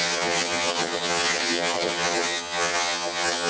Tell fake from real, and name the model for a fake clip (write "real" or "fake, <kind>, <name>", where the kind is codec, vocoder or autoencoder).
fake, vocoder, HiFi-GAN